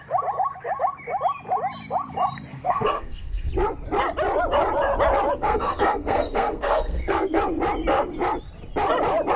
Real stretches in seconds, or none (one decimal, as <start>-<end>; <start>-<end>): 0.0-2.5; 3.5-5.4; 7.4-9.4